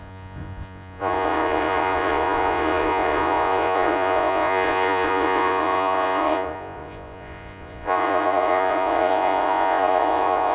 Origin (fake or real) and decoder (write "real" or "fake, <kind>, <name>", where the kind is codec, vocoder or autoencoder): fake, vocoder, Vocos